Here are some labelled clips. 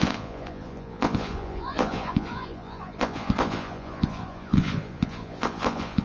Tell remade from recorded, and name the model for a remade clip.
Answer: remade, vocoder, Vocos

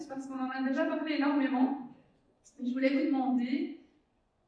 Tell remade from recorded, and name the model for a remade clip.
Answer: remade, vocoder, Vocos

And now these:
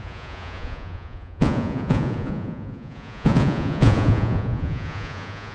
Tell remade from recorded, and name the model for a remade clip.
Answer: remade, vocoder, Vocos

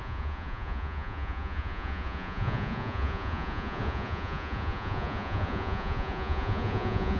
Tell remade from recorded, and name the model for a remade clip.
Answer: remade, vocoder, Vocos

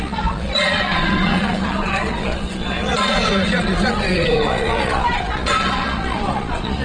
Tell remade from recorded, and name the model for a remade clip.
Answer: remade, vocoder, Vocos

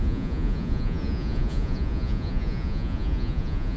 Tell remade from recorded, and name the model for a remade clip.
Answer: remade, vocoder, Vocos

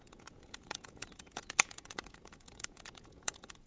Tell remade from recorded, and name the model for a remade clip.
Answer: remade, vocoder, Vocos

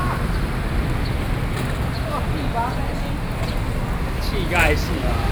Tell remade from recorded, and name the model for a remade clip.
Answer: recorded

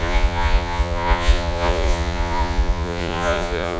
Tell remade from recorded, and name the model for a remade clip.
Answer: remade, vocoder, Vocos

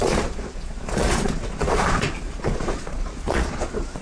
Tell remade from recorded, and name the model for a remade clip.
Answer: remade, vocoder, Vocos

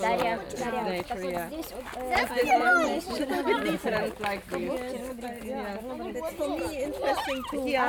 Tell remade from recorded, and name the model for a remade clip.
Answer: recorded